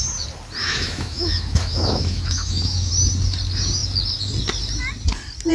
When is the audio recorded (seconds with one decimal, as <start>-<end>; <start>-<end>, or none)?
0.0-0.6; 2.9-5.5